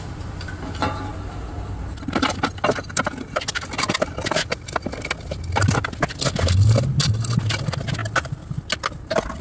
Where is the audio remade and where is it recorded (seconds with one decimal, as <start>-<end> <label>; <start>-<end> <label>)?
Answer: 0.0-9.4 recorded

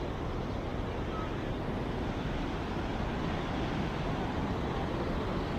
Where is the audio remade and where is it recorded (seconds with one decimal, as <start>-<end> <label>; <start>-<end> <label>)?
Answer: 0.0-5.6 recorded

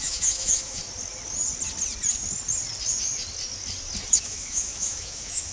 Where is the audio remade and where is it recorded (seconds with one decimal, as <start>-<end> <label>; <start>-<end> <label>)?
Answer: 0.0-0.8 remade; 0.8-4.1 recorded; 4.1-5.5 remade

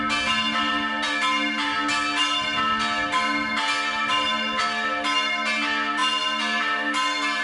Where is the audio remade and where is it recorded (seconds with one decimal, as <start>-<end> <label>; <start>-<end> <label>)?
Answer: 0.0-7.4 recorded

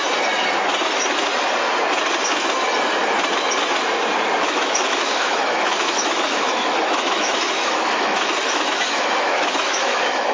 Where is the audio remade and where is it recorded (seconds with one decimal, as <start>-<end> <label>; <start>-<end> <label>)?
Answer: 0.0-4.4 recorded; 4.4-10.3 remade

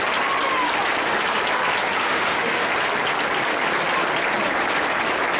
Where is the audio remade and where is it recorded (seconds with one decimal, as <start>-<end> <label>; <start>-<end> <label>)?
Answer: 0.0-2.0 recorded; 2.0-2.7 remade; 2.7-5.4 recorded

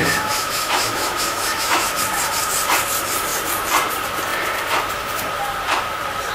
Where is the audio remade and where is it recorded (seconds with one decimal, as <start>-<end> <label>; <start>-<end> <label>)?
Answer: 0.0-1.9 remade; 1.9-6.3 recorded